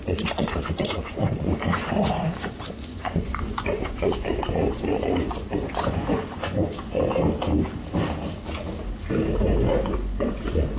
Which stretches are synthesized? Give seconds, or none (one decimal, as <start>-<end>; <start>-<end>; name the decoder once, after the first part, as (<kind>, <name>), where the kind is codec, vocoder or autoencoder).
0.0-7.0 (vocoder, Vocos); 9.4-10.8